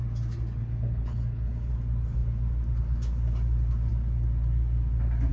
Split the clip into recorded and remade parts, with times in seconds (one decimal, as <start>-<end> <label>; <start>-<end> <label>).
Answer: 0.0-0.6 recorded; 0.6-1.7 remade; 1.7-5.3 recorded